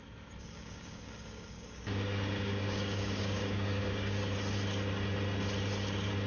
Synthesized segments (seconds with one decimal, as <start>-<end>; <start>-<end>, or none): 0.4-4.2